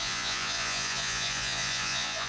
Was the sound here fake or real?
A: fake